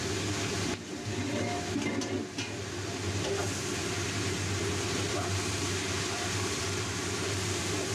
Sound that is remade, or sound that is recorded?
recorded